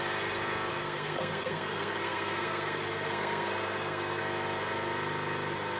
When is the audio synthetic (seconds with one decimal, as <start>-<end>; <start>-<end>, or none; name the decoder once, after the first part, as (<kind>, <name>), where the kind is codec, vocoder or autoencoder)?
0.7-4.2 (codec, SNAC)